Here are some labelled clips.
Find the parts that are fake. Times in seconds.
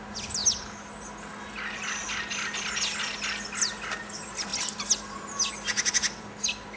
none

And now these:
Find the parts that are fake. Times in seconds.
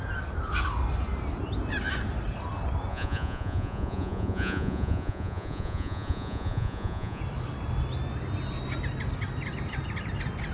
2.9-7.2 (vocoder, Vocos)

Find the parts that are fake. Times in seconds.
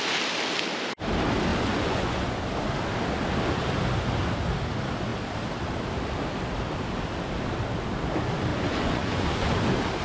1.5-2.4 (vocoder, Vocos); 8.5-9.5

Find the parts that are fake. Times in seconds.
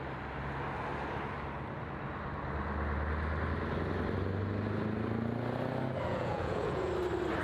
6.1-6.9 (vocoder, Vocos)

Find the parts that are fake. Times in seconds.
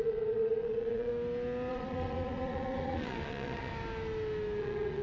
0.0-1.1 (vocoder, Vocos); 1.7-3.7; 4.6-5.0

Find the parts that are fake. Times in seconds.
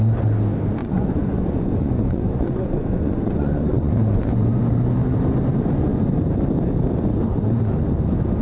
0.8-4.6 (vocoder, Vocos)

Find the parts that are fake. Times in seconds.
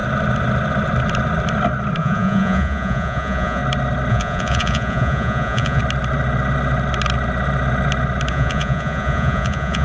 2.0-3.6 (vocoder, Vocos); 4.1-5.8; 8.3-9.8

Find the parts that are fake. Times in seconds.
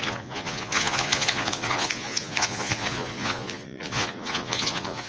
0.0-5.1 (vocoder, Vocos)